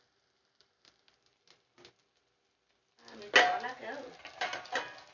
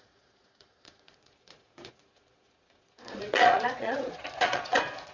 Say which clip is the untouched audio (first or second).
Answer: first